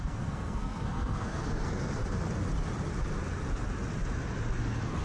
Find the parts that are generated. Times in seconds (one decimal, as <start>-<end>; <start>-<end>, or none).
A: 0.0-2.0